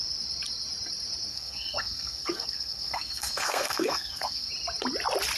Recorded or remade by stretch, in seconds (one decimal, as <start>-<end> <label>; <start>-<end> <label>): 0.0-1.3 recorded; 1.3-4.5 remade; 4.5-5.4 recorded